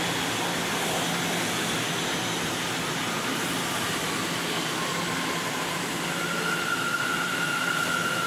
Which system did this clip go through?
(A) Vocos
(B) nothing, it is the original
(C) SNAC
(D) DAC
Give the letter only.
B